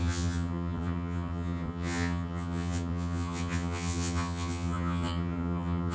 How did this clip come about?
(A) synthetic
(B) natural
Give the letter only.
A